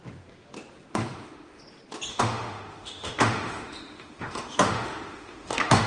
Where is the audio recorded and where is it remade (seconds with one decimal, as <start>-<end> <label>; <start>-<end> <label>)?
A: 0.0-0.9 recorded; 0.9-1.6 remade; 1.6-2.1 recorded; 2.1-5.9 remade